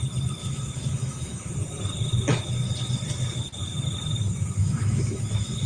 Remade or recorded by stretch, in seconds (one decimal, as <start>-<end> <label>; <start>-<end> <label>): 0.0-0.4 recorded; 0.4-1.5 remade; 1.5-4.6 recorded; 4.6-5.7 remade